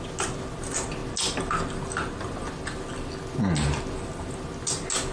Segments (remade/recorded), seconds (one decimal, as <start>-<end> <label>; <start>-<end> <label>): 0.0-5.1 recorded